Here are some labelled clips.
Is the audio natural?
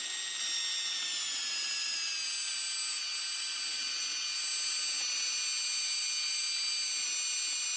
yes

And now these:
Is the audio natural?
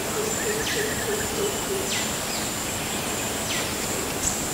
yes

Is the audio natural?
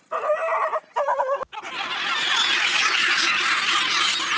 yes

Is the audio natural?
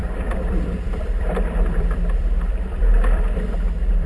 no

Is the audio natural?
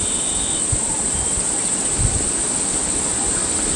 yes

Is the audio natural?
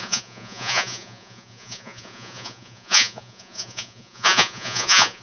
no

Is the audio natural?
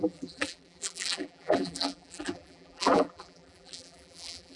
no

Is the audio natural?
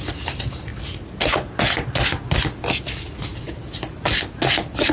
yes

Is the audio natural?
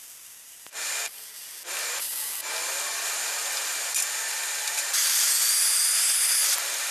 yes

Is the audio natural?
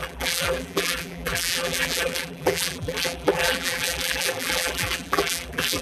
no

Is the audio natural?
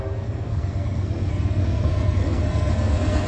no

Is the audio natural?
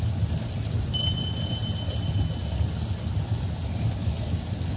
yes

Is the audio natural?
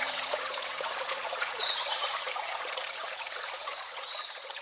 no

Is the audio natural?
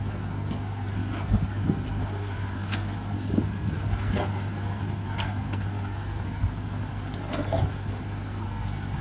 no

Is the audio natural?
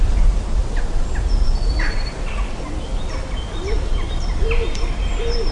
yes